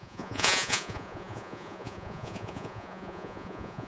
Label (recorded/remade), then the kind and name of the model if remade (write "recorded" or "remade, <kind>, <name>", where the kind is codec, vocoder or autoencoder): remade, vocoder, Vocos